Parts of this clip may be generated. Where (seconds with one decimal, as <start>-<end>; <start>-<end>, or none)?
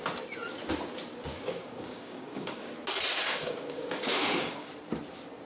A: 1.3-2.7; 3.1-4.7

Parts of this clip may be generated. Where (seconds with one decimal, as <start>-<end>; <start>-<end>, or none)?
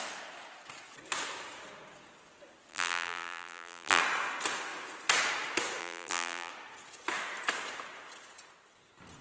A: 2.7-4.0; 5.8-6.5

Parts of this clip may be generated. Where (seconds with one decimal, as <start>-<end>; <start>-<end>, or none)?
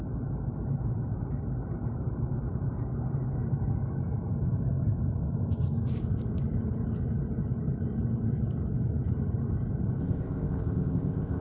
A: 10.0-11.4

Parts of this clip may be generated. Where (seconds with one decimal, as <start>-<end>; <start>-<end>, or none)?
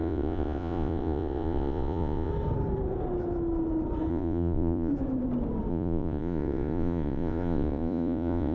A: 0.0-2.3; 4.1-4.9; 5.7-8.5